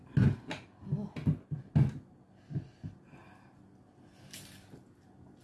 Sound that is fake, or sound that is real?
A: real